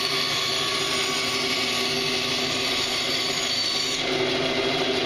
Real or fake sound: real